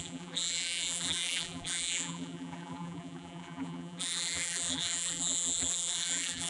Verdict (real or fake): fake